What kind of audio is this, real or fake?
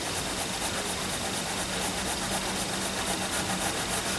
real